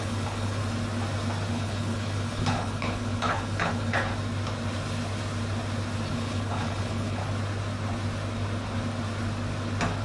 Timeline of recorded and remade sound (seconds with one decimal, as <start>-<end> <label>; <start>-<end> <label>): 0.0-0.6 remade; 0.6-1.5 recorded; 1.5-4.1 remade; 4.1-6.1 recorded; 6.1-7.2 remade; 7.2-10.0 recorded